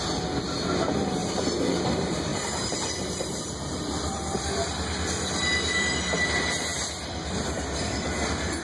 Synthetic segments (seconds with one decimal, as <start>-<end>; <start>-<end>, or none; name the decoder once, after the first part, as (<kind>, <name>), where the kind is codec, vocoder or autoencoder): 1.2-1.9 (vocoder, BigVGAN v2); 2.3-4.4